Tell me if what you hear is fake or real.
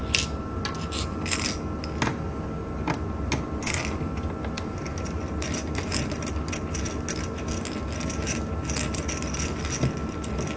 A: real